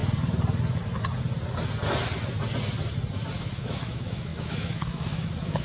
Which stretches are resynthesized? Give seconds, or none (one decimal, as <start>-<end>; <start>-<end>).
3.4-5.6